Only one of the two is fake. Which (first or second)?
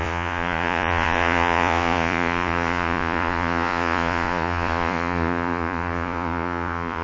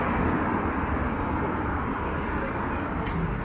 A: first